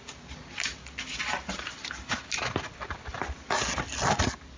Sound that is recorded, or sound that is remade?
recorded